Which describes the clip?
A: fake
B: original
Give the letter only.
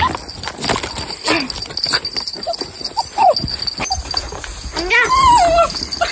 B